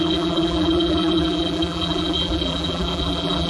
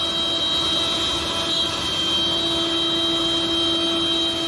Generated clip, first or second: first